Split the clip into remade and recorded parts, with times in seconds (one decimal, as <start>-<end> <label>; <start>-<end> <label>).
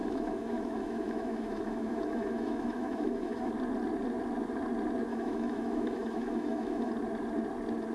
0.0-3.5 remade; 3.5-5.1 recorded; 5.1-6.9 remade; 6.9-7.9 recorded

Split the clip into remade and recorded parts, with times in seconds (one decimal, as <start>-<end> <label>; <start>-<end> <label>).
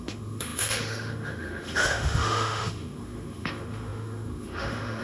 0.0-5.0 remade